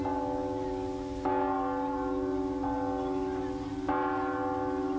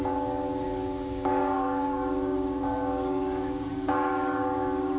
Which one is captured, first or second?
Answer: first